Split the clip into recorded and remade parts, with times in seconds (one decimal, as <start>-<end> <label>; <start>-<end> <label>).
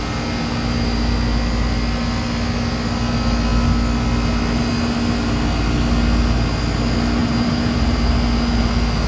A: 0.0-7.2 recorded; 7.2-8.1 remade; 8.1-9.1 recorded